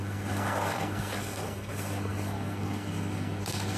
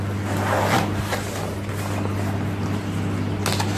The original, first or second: second